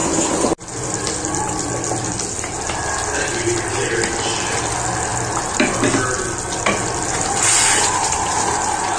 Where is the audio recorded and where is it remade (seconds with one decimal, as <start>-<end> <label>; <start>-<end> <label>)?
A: 0.0-9.0 recorded